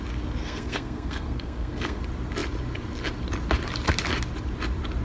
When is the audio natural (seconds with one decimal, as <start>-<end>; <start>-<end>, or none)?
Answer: 0.0-0.4; 2.0-5.0